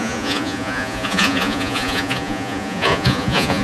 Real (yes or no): no